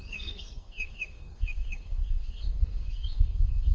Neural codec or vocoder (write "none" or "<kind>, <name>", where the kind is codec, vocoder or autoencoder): codec, SNAC